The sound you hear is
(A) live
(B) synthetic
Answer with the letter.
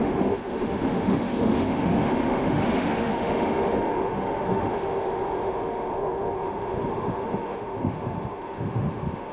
B